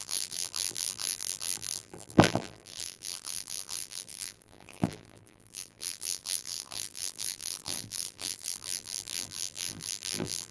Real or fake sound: fake